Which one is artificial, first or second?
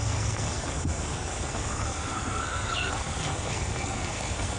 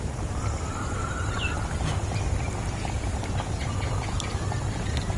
first